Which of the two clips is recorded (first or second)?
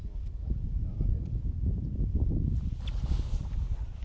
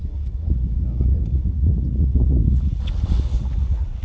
first